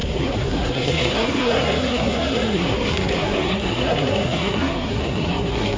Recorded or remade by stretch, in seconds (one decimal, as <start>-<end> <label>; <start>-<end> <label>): 0.0-5.8 remade